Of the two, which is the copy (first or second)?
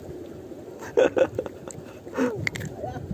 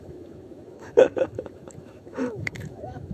second